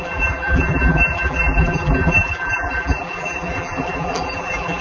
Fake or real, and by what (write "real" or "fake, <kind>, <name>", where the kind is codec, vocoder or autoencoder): fake, vocoder, BigVGAN v2